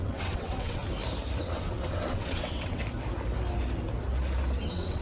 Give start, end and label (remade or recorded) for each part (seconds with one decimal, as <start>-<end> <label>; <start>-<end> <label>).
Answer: 0.0-0.8 remade; 0.8-1.4 recorded; 1.4-2.8 remade; 2.8-4.6 recorded; 4.6-5.0 remade